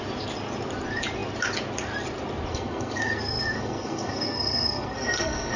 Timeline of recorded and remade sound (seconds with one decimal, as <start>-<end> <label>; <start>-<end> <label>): 0.0-2.5 recorded; 2.5-5.6 remade